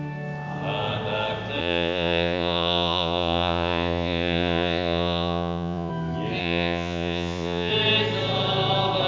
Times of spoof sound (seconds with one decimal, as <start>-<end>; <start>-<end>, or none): 1.6-5.9; 6.4-7.7